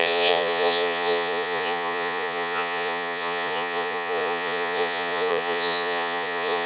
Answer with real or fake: fake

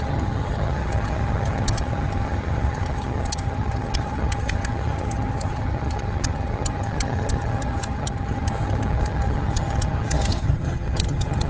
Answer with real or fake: fake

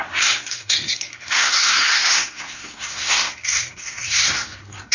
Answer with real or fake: fake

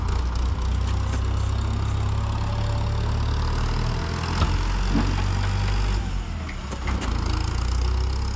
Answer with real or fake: real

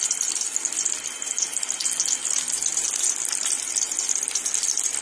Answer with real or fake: real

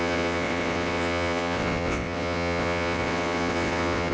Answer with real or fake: fake